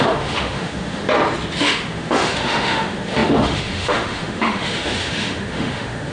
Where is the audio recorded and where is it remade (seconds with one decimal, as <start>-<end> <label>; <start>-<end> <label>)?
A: 0.0-1.0 remade; 1.0-1.6 recorded; 1.6-6.1 remade